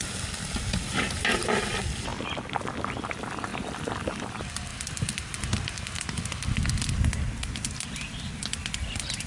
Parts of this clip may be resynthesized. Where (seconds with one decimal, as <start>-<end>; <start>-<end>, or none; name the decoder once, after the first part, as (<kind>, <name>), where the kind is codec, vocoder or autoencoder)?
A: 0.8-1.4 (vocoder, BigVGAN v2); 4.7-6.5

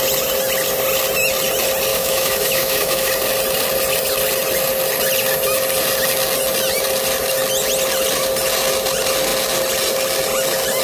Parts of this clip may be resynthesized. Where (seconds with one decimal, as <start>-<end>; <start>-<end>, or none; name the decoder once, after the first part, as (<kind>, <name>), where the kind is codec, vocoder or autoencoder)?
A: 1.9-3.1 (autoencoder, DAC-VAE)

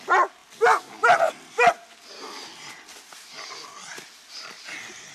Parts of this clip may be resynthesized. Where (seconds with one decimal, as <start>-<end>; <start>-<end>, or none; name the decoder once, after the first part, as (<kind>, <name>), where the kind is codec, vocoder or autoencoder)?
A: none

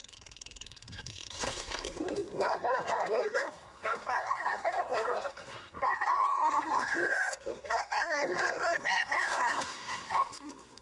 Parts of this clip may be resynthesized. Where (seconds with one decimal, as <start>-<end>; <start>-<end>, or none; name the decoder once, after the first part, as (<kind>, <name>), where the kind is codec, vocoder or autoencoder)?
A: 0.0-10.8 (codec, SNAC)

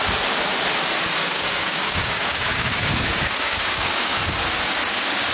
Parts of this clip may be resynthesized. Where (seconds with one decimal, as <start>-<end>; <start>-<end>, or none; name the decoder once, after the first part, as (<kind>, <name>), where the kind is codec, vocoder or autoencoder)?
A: 1.2-4.4 (codec, DAC)

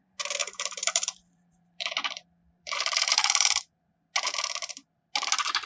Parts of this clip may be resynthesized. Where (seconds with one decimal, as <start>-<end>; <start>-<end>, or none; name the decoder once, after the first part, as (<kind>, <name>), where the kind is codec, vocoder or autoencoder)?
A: 0.4-3.6 (vocoder, BigVGAN v2)

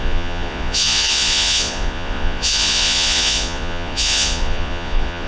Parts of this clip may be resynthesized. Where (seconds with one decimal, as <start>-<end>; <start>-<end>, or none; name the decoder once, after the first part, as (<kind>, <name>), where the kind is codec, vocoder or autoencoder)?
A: 0.0-5.3 (vocoder, Vocos)